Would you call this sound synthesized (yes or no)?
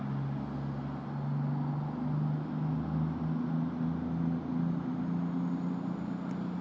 no